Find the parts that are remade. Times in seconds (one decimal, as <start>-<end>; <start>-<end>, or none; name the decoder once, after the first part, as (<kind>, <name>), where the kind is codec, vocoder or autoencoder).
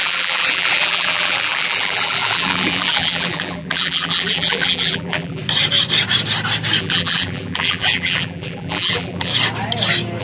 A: 0.0-5.4 (vocoder, BigVGAN v2); 6.8-9.3